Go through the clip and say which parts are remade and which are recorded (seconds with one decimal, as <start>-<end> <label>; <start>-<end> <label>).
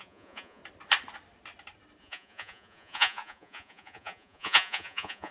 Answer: 0.0-0.6 remade; 0.6-2.0 recorded; 2.0-5.3 remade